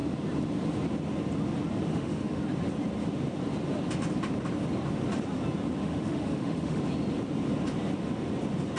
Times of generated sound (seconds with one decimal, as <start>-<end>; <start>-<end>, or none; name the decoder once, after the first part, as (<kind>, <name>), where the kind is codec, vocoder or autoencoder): 1.9-2.4 (autoencoder, DAC-VAE); 5.8-6.8

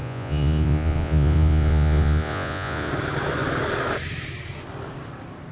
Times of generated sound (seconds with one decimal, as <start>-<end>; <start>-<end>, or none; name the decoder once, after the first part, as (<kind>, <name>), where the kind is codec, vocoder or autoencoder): 0.0-2.9 (vocoder, Vocos)